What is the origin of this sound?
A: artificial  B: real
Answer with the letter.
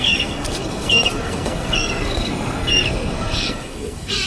A